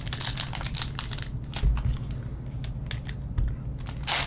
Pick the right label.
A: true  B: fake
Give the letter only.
A